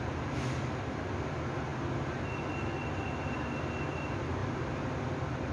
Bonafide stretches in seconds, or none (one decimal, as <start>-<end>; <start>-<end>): 0.0-5.5